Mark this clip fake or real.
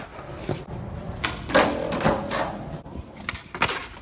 real